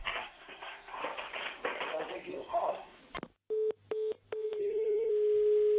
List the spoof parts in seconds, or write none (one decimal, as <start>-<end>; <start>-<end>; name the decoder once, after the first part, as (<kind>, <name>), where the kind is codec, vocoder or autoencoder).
0.0-1.0 (codec, SNAC); 2.3-3.0; 4.6-5.1